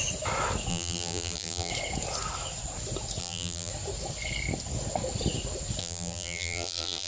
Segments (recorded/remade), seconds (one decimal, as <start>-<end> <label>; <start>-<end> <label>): 0.0-0.7 recorded; 0.7-1.7 remade; 1.7-3.2 recorded; 3.2-3.7 remade; 3.7-5.8 recorded; 5.8-7.1 remade